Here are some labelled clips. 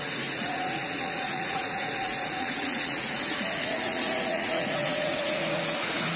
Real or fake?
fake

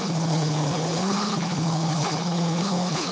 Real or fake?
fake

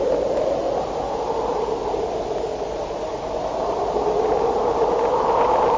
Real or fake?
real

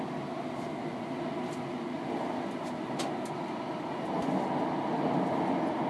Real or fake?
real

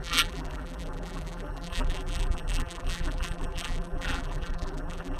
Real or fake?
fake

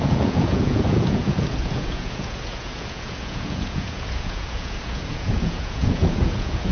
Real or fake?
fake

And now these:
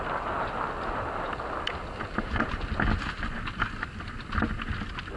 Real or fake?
real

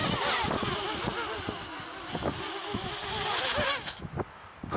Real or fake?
real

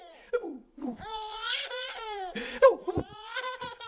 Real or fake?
fake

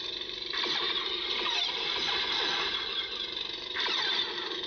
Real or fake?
fake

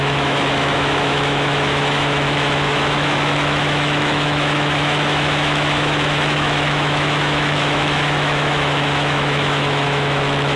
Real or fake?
fake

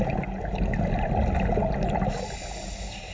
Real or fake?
real